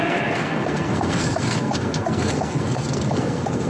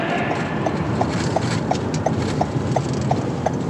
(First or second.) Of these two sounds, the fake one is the first